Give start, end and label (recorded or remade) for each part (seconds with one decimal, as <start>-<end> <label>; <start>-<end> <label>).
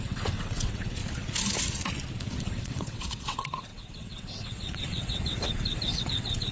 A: 0.0-1.0 remade; 1.0-2.4 recorded; 2.4-6.5 remade